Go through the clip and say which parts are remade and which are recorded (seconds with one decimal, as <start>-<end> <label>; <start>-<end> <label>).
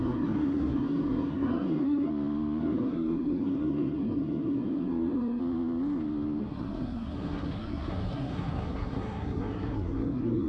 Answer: 0.0-2.1 remade; 2.1-2.6 recorded; 2.6-5.4 remade; 5.4-6.4 recorded; 6.4-10.5 remade